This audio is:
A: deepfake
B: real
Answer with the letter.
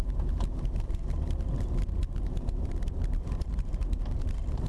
A